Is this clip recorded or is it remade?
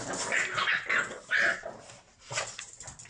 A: recorded